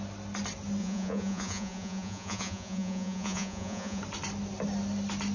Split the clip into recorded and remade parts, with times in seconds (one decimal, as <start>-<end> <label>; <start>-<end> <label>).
0.0-0.8 recorded; 0.8-4.0 remade; 4.0-5.3 recorded